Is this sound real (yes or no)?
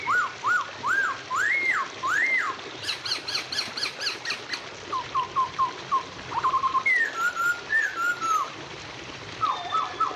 yes